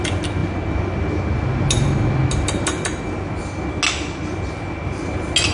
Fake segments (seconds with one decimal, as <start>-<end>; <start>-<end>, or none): none